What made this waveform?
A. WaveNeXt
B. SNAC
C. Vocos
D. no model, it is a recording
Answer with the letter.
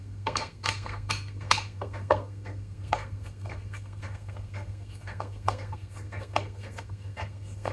B